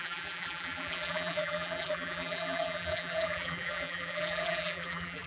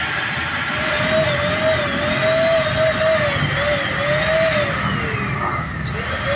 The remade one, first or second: first